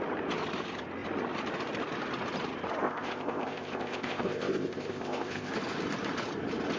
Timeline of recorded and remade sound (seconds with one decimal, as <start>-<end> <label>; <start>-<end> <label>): 0.0-2.8 recorded; 2.8-5.5 remade; 5.5-6.8 recorded